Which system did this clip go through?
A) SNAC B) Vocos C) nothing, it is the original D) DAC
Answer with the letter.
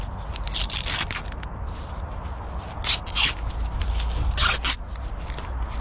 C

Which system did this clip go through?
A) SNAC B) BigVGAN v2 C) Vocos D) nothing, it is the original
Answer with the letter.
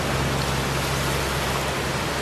D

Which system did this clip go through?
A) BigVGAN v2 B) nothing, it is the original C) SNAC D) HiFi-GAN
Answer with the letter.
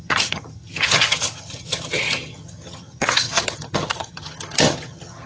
D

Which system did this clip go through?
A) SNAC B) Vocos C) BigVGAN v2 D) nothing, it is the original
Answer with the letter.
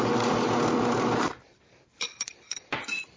D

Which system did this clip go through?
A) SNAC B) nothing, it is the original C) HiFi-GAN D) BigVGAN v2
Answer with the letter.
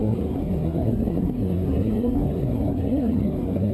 A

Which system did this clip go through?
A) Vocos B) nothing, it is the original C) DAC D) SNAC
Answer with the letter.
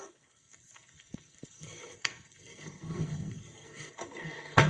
D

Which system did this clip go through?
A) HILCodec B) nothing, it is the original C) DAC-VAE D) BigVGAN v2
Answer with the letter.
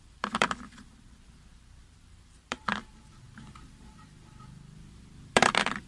D